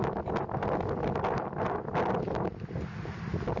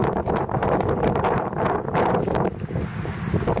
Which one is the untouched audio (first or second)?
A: first